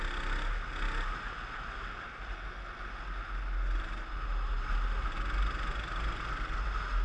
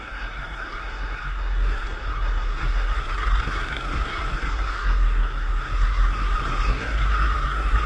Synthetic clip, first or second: second